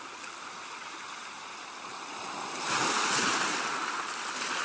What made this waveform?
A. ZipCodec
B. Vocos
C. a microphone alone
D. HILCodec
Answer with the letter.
C